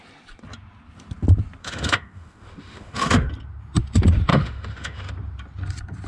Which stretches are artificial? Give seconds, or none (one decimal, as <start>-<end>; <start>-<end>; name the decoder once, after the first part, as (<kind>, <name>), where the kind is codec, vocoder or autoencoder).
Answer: 1.6-3.3 (autoencoder, DAC-VAE); 4.3-5.1